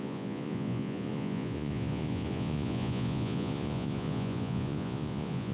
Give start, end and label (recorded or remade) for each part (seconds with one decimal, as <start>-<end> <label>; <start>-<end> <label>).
0.0-5.5 remade